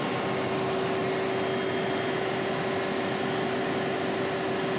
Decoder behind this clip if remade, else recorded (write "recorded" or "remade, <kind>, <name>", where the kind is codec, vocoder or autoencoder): recorded